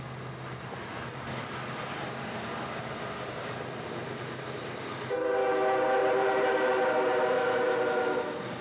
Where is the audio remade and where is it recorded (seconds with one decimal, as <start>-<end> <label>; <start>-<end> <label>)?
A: 0.0-6.0 recorded; 6.0-6.8 remade; 6.8-8.6 recorded